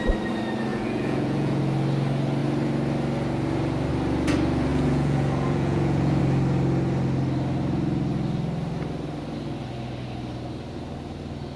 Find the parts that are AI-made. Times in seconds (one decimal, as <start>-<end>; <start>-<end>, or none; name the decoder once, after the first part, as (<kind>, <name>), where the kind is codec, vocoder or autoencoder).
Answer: 0.7-1.6 (vocoder, Vocos); 4.7-6.2